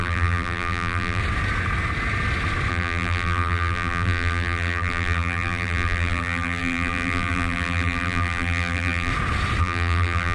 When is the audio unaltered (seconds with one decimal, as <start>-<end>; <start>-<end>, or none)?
1.2-2.7; 9.1-9.6